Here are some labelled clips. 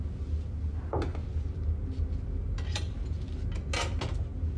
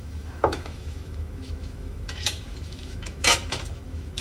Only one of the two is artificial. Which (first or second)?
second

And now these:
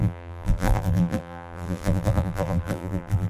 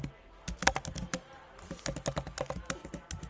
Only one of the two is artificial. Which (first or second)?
first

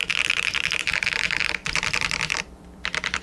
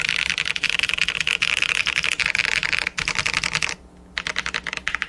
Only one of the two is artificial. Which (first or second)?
first